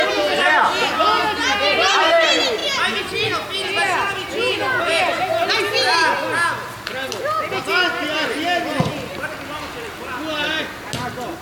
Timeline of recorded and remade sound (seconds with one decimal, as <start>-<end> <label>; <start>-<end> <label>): 0.0-11.4 recorded